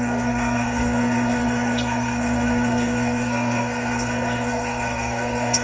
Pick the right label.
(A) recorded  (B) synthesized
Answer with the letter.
B